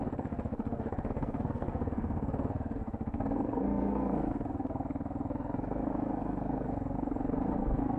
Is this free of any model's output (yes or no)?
no